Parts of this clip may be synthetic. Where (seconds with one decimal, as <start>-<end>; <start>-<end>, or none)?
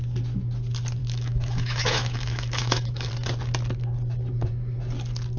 1.0-3.1